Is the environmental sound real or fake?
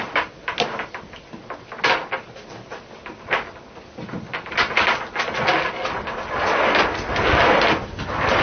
real